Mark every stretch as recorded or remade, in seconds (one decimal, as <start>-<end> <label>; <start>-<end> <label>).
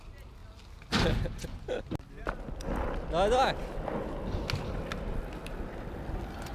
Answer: 0.0-6.5 recorded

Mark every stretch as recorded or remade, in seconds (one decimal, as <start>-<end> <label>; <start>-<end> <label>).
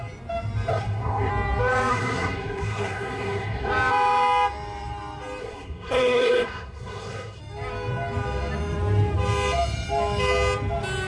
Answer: 0.0-0.7 recorded; 0.7-1.3 remade; 1.3-1.9 recorded; 1.9-3.7 remade; 3.7-5.4 recorded; 5.4-7.4 remade; 7.4-11.1 recorded